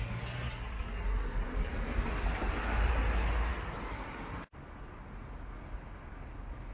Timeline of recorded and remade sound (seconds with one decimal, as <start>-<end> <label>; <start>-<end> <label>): 0.0-6.7 recorded